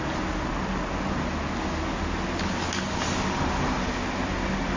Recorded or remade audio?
recorded